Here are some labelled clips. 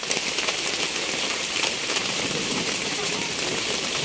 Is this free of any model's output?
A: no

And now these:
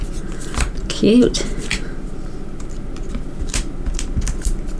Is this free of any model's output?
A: no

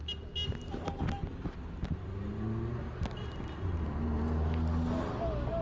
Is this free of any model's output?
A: yes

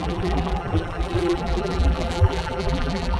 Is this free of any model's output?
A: no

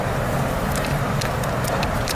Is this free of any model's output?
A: no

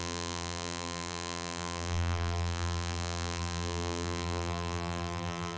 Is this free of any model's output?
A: no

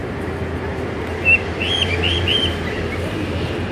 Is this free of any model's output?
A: yes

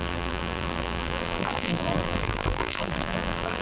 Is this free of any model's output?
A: no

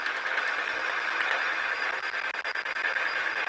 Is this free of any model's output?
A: yes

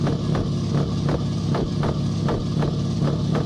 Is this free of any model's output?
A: yes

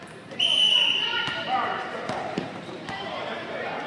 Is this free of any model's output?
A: no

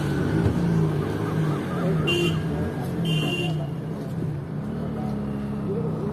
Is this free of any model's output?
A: yes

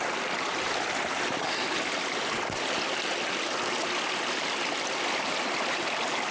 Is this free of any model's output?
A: yes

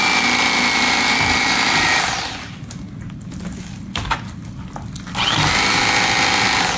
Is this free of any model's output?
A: yes